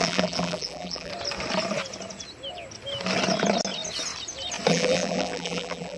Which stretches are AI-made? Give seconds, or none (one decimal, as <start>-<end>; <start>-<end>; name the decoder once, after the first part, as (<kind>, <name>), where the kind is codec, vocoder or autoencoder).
0.0-1.1 (vocoder, BigVGAN v2); 4.7-6.0